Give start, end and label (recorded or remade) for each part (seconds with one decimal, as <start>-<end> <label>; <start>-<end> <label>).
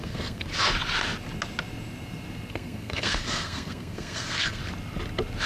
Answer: 0.0-0.5 remade; 0.5-2.5 recorded; 2.5-4.6 remade; 4.6-5.5 recorded